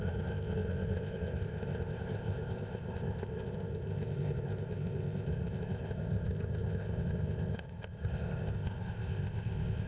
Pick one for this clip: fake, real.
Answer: fake